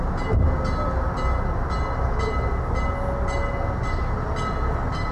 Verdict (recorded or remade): recorded